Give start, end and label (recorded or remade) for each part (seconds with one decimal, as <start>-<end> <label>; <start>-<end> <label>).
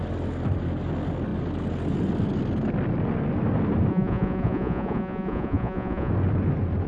0.0-3.9 recorded; 3.9-6.1 remade; 6.1-6.9 recorded